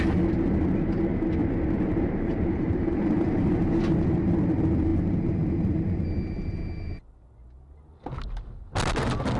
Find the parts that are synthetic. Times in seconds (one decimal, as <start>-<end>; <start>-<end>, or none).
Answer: 1.4-3.8